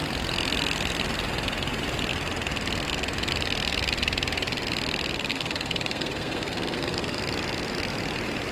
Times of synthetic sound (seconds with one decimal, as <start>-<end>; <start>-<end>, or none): 5.3-7.2